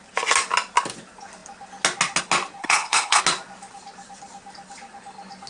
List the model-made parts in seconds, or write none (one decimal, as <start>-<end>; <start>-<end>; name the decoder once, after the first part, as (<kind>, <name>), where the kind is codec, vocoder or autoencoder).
2.6-3.2 (codec, HILCodec)